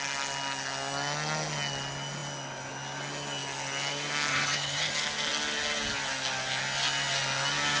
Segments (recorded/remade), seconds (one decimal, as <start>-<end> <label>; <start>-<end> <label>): 0.0-4.3 recorded; 4.3-4.9 remade; 4.9-7.8 recorded